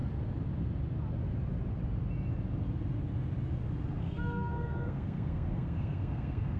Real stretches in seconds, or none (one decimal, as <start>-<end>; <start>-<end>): 0.0-4.0